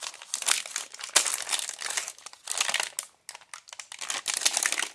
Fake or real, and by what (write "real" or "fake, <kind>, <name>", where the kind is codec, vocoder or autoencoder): real